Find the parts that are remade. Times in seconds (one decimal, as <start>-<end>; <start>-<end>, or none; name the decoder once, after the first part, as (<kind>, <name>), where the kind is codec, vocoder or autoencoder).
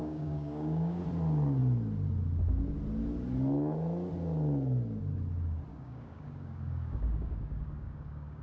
0.0-1.0 (codec, DAC); 5.7-8.4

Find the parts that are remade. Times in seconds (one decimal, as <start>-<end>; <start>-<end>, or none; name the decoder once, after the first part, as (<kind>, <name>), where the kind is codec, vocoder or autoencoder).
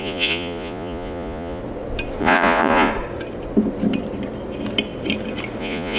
0.0-1.6 (vocoder, Vocos); 2.2-2.9; 5.6-6.0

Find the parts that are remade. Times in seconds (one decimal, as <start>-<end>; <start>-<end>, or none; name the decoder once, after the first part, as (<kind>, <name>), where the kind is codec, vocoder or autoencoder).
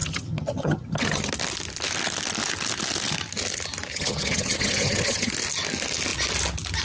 0.0-1.3 (vocoder, HiFi-GAN); 3.9-5.3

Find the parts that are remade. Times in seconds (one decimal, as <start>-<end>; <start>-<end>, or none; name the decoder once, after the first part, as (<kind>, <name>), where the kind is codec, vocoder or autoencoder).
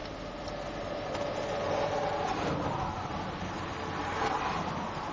none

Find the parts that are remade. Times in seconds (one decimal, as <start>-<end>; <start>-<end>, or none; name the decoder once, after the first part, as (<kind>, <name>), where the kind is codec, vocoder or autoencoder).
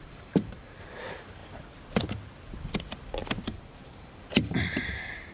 0.0-1.4 (vocoder, BigVGAN v2); 3.2-5.3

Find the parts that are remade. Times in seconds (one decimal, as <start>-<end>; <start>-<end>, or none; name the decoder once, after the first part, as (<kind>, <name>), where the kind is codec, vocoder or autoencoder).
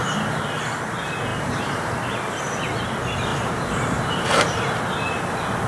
1.3-2.8 (vocoder, BigVGAN v2); 3.3-4.6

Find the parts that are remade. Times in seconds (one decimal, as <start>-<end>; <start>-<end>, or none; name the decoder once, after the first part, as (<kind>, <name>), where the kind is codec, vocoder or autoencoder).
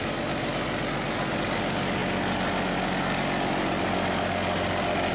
none